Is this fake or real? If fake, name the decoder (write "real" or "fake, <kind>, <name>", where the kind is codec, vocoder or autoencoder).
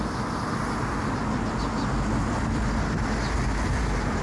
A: real